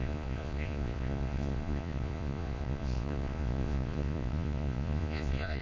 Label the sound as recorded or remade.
remade